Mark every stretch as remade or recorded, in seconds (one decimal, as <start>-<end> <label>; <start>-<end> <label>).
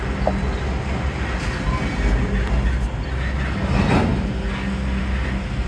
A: 0.0-5.7 recorded